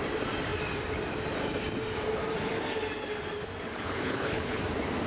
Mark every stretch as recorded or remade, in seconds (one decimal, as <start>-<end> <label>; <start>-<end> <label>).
0.0-3.7 recorded; 3.7-4.6 remade; 4.6-5.1 recorded